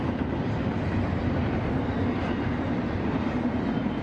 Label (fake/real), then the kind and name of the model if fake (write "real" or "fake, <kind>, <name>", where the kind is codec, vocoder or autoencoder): real